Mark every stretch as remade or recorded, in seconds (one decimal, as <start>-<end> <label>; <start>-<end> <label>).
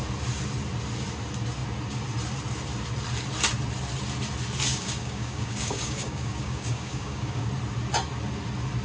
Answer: 0.0-4.7 recorded; 4.7-7.5 remade; 7.5-8.8 recorded